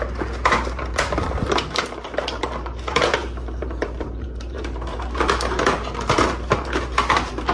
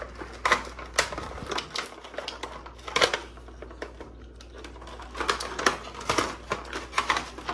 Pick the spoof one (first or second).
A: first